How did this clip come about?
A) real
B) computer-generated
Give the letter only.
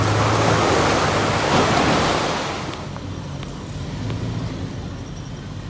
A